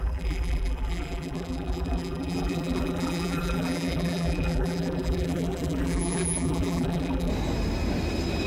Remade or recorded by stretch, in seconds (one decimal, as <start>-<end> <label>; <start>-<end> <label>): 0.0-7.3 remade; 7.3-8.5 recorded